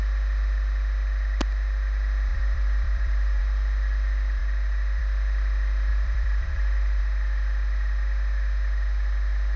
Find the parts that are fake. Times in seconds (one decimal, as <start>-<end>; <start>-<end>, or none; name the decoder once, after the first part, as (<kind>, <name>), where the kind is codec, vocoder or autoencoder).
2.3-3.4 (vocoder, BigVGAN v2); 5.9-7.0